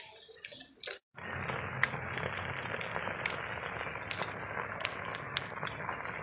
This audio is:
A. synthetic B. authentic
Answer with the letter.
B